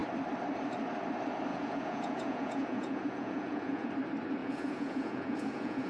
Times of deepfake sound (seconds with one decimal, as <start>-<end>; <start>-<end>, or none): 1.5-3.9; 4.4-5.9